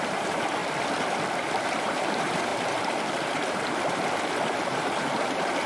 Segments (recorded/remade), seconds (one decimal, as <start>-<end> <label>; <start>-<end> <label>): 0.0-0.6 remade; 0.6-1.6 recorded; 1.6-2.5 remade; 2.5-4.6 recorded; 4.6-5.7 remade